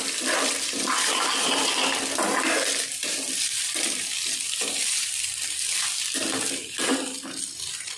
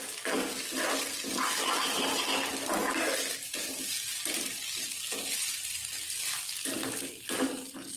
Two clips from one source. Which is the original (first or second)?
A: second